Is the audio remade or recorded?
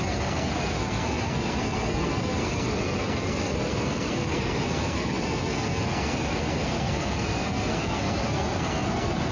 remade